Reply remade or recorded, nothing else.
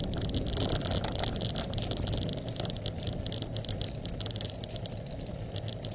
recorded